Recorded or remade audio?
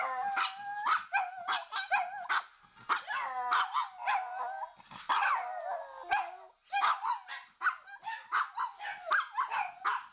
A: recorded